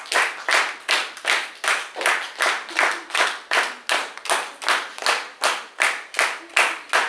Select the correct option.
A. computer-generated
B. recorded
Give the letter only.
B